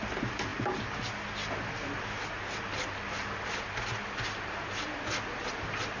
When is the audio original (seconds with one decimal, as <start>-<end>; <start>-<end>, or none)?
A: 0.0-6.0